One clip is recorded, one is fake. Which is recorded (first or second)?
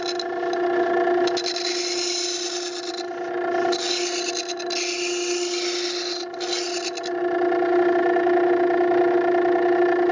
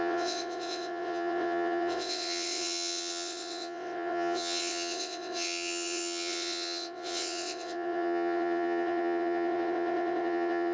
first